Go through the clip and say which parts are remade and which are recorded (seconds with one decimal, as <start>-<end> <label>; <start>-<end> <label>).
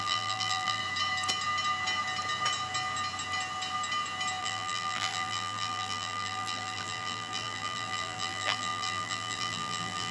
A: 0.0-0.8 remade; 0.8-4.4 recorded; 4.4-10.1 remade